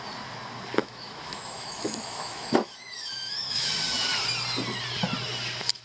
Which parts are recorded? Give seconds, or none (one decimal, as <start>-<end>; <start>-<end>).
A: 0.0-0.8; 3.7-5.8